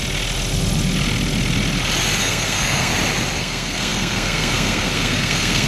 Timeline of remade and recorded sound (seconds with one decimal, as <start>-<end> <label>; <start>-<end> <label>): 0.0-2.2 recorded; 2.2-2.9 remade; 2.9-3.4 recorded; 3.4-5.7 remade